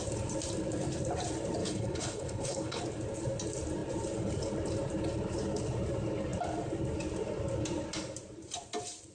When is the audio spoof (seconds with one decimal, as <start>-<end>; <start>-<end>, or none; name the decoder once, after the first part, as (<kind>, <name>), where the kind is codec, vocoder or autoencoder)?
1.6-2.8 (codec, HILCodec)